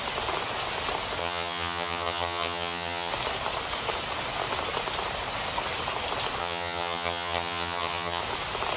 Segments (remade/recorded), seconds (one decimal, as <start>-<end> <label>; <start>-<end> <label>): 0.0-1.2 recorded; 1.2-3.1 remade; 3.1-6.4 recorded; 6.4-8.2 remade; 8.2-8.8 recorded